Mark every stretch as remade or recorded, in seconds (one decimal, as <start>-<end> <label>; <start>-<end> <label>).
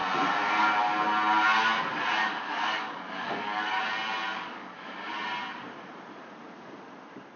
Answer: 0.0-2.2 recorded; 2.2-3.8 remade; 3.8-4.3 recorded; 4.3-5.1 remade; 5.1-7.4 recorded